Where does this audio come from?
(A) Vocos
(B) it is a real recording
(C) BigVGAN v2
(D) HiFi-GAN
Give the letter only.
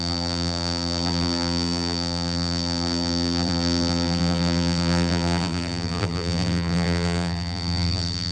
C